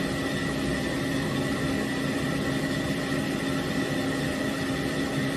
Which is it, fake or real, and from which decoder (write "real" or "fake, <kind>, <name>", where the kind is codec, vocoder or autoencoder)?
real